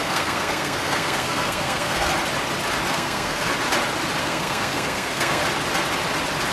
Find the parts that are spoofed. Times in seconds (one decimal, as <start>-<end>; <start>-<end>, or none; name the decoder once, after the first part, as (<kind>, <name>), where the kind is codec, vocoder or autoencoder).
0.0-2.1 (codec, SNAC); 2.9-3.5; 4.2-5.4